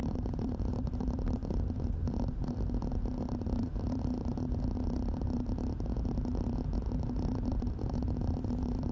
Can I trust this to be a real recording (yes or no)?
no